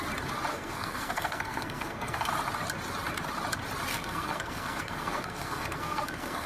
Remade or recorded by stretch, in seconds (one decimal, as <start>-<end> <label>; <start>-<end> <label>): 0.0-0.5 recorded; 0.5-2.3 remade; 2.3-3.9 recorded; 3.9-6.5 remade